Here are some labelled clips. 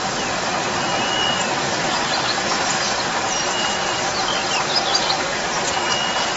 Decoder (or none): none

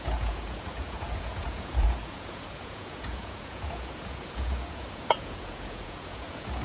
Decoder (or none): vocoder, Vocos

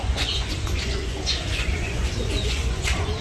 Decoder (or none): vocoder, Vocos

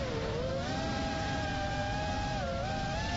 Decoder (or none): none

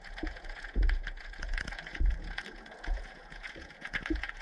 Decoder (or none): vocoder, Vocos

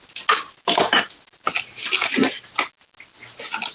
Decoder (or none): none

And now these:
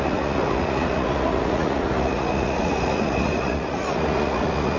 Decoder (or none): vocoder, Vocos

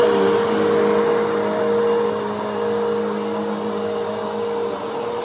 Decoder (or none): none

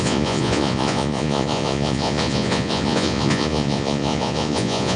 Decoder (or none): vocoder, Vocos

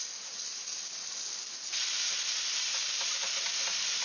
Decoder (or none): none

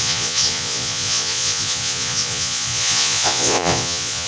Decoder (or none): vocoder, Vocos